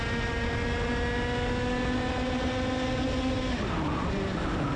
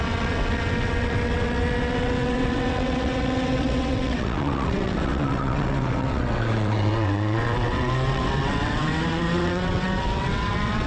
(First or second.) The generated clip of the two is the second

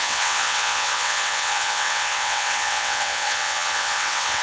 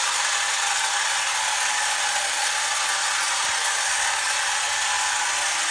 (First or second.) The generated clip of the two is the first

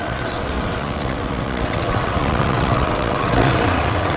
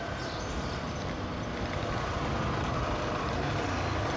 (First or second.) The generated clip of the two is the first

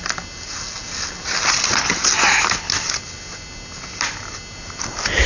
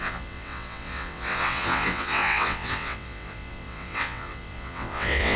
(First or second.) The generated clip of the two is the second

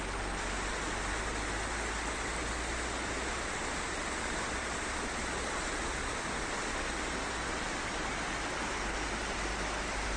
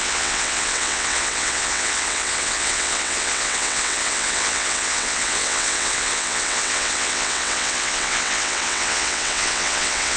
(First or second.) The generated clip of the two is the second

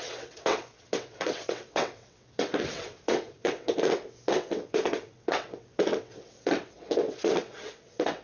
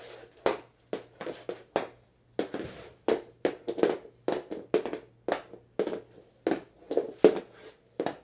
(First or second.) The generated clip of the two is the first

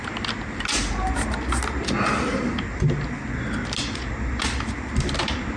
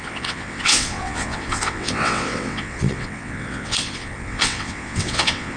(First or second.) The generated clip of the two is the second